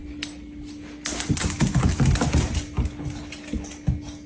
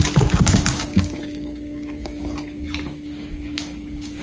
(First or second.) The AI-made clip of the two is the second